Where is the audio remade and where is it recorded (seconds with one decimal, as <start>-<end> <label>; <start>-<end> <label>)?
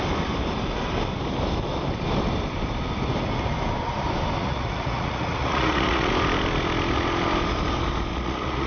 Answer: 0.0-4.4 recorded; 4.4-6.1 remade; 6.1-8.1 recorded; 8.1-8.7 remade